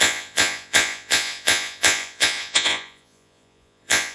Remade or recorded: remade